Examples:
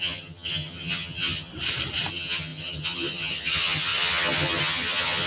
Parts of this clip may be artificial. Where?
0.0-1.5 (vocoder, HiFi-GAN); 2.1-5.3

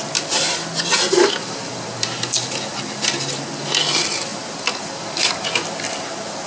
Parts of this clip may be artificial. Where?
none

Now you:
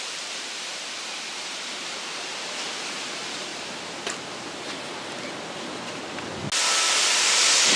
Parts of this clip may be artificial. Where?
0.0-3.5 (vocoder, BigVGAN v2); 7.2-7.8

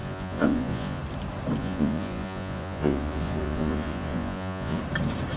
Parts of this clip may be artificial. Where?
0.0-1.0 (vocoder, Vocos); 1.6-4.8

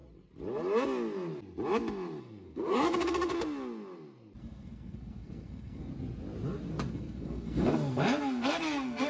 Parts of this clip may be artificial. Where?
2.2-3.3 (codec, SNAC); 4.4-5.9; 6.9-9.1

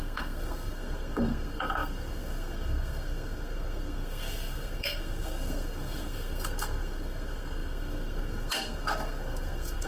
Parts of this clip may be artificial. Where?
0.0-9.9 (codec, SNAC)